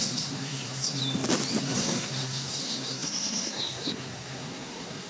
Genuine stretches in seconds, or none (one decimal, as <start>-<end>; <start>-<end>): 1.0-1.6